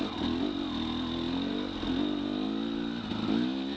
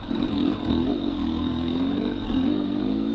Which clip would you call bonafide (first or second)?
first